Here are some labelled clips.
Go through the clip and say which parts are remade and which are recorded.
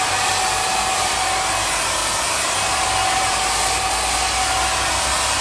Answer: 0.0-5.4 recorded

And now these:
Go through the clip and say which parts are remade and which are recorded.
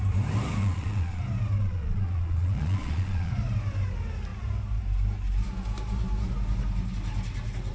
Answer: 0.0-0.6 recorded; 0.6-1.2 remade; 1.2-1.6 recorded; 1.6-3.3 remade; 3.3-7.7 recorded